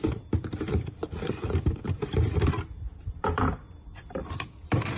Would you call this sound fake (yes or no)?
yes